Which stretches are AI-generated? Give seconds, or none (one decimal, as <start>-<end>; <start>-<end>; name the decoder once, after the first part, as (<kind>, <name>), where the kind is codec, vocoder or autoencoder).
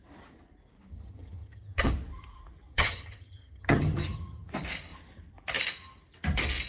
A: 0.9-1.9 (vocoder, HiFi-GAN); 2.7-4.5